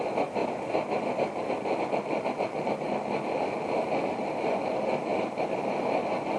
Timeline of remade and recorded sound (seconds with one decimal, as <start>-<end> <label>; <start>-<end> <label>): 0.0-6.4 recorded